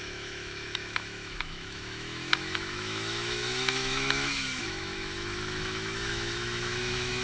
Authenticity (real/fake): fake